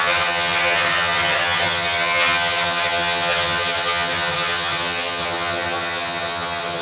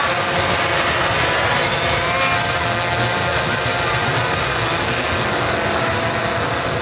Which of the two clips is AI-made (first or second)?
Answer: first